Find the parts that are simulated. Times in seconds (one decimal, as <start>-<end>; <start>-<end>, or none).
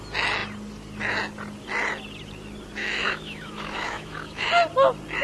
2.8-4.5